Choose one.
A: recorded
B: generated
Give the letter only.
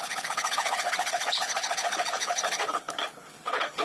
B